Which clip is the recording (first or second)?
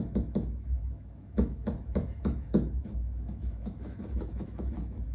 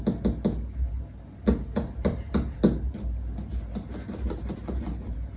second